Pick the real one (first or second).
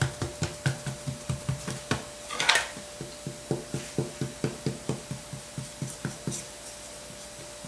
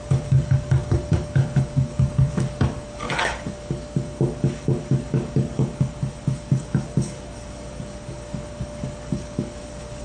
first